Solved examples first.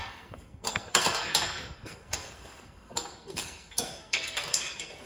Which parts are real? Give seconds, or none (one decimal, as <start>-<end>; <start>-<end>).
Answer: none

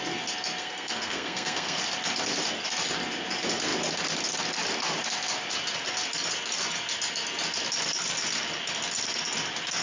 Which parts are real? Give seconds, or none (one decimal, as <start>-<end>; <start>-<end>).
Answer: 0.0-0.6; 1.8-9.8

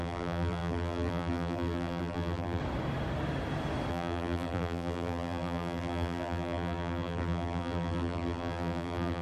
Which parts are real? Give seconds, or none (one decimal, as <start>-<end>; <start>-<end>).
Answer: 2.6-3.9